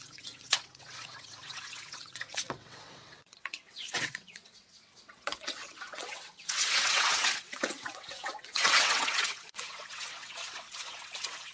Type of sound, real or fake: fake